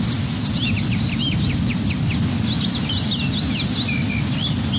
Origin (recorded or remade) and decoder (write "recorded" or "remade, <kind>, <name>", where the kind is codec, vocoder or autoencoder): recorded